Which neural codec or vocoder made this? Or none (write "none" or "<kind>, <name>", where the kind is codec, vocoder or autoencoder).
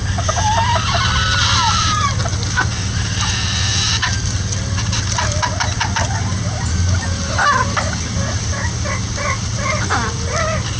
none